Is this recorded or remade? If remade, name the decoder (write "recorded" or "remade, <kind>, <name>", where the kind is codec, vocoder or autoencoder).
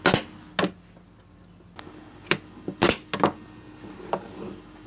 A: recorded